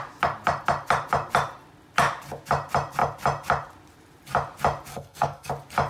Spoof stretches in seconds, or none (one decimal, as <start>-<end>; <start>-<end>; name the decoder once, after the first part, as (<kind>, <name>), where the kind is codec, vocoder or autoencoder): 4.9-5.5 (codec, SNAC)